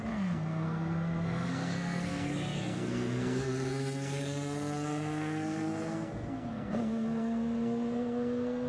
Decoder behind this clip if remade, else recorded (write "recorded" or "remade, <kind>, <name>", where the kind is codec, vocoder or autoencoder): remade, codec, SNAC